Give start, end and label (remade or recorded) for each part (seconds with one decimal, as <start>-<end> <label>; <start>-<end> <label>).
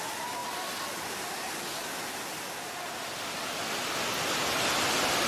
0.0-5.3 recorded